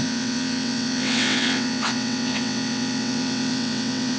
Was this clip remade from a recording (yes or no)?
yes